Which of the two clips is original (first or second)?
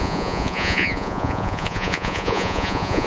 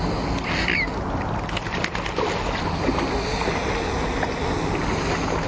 second